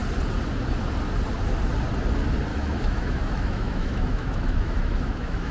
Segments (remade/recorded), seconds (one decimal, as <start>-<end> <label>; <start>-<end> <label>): 0.0-2.5 recorded; 2.5-5.5 remade